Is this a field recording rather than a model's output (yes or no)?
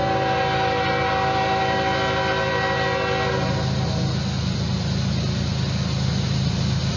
yes